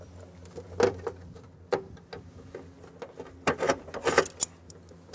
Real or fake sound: real